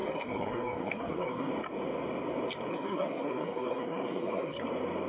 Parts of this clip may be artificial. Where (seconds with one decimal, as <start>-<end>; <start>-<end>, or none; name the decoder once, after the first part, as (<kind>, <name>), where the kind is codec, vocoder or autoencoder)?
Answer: 0.0-1.5 (codec, SNAC); 2.7-4.6